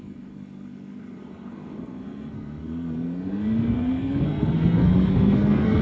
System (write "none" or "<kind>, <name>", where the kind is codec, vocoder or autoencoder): codec, SNAC